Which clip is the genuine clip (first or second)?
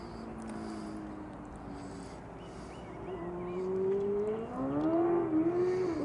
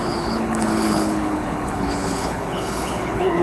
first